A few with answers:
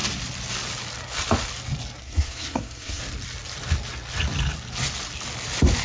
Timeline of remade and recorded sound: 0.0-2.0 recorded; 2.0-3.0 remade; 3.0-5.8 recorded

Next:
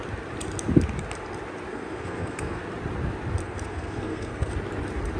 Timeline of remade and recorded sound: 0.0-1.7 recorded; 1.7-2.6 remade; 2.6-3.4 recorded; 3.4-4.5 remade; 4.5-5.2 recorded

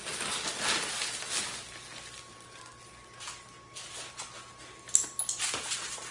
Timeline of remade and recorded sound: 0.0-6.1 recorded

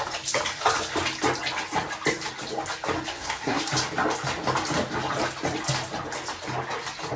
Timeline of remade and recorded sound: 0.0-3.1 recorded; 3.1-3.6 remade; 3.6-7.2 recorded

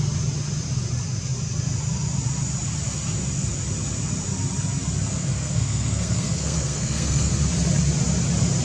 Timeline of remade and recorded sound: 0.0-5.1 recorded; 5.1-7.3 remade; 7.3-8.6 recorded